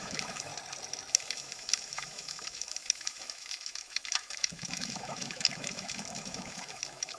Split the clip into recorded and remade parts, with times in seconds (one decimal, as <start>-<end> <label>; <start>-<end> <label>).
0.0-0.5 remade; 0.5-1.1 recorded; 1.1-7.2 remade